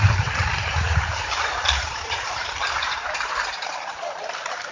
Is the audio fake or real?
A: fake